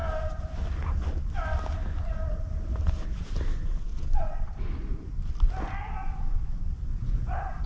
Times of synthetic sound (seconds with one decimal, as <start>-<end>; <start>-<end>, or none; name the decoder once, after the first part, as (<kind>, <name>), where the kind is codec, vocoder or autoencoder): 3.9-4.6 (vocoder, Vocos); 6.9-7.7